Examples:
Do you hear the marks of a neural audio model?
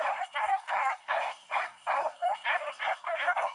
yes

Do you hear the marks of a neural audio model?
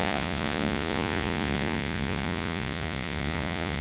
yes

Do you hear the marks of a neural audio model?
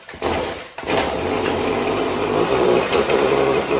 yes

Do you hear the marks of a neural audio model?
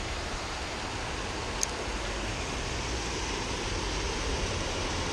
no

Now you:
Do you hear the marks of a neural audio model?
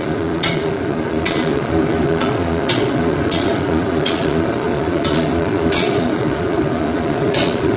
yes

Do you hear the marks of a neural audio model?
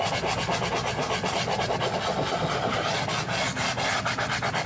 no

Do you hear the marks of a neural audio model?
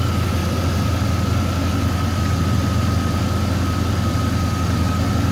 no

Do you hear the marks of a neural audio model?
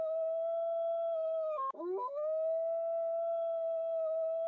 yes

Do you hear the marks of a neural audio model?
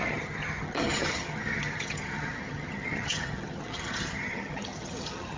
yes